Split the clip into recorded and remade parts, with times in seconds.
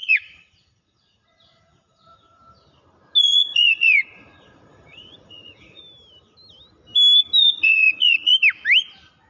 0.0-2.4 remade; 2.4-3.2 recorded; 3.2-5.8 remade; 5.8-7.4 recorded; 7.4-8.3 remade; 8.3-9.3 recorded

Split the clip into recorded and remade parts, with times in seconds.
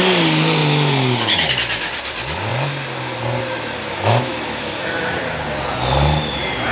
0.0-3.8 recorded; 3.8-5.2 remade; 5.2-6.7 recorded